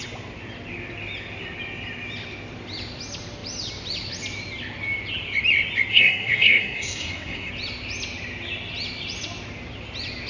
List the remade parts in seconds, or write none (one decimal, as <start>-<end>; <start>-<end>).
5.9-7.5